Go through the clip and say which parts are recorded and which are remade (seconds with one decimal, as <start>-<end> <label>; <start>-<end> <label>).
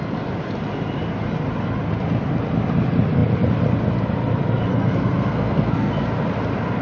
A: 0.0-4.7 recorded; 4.7-5.9 remade; 5.9-6.8 recorded